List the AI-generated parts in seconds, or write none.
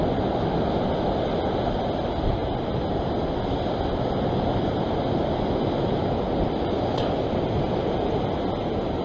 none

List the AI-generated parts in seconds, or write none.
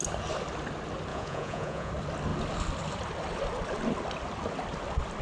1.1-1.9 (vocoder, Vocos)